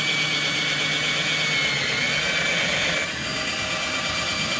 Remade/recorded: recorded